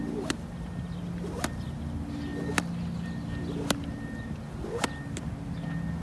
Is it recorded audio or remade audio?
recorded